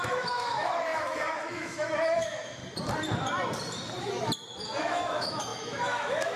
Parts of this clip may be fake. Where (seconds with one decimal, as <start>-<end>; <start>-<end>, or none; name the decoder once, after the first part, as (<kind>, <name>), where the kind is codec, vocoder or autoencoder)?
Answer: 0.0-2.6 (autoencoder, DAC-VAE); 4.8-6.4